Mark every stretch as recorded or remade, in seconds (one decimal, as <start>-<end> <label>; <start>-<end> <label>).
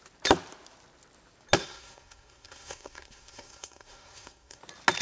0.0-1.6 recorded; 1.6-4.6 remade; 4.6-5.0 recorded